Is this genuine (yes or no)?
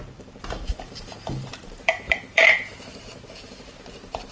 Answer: no